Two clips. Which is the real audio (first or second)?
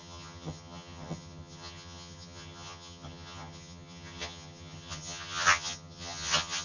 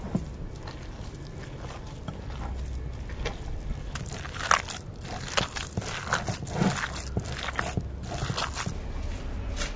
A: second